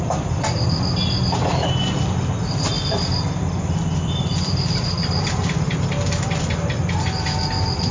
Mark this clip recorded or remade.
recorded